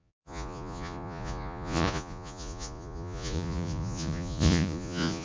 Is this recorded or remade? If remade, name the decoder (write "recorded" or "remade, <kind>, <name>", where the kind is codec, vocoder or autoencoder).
remade, vocoder, Vocos